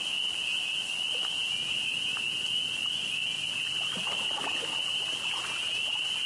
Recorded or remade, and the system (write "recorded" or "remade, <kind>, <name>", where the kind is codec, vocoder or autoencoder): recorded